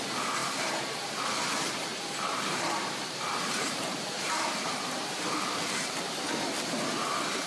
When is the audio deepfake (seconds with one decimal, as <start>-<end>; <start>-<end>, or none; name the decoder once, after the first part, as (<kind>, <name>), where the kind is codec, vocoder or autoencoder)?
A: 0.4-1.1 (vocoder, BigVGAN v2); 1.9-6.0